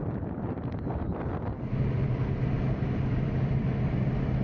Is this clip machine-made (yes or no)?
no